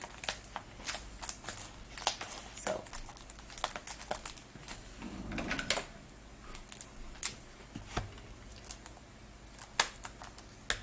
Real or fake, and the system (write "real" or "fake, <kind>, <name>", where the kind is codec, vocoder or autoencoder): real